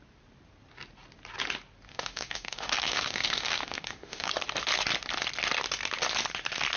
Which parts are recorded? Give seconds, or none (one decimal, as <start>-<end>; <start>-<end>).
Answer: 0.0-1.9; 4.3-6.8

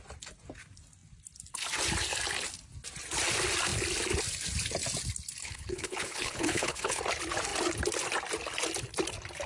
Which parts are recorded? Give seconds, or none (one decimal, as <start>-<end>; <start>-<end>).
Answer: 0.0-5.4; 7.0-9.5

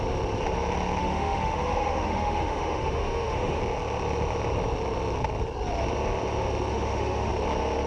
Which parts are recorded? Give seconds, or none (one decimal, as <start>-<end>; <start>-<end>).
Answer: 0.0-1.0; 3.6-6.7; 7.3-7.9